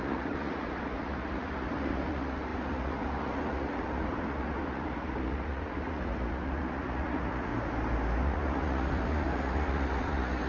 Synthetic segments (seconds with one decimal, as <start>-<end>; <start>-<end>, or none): 0.0-7.5; 8.2-10.5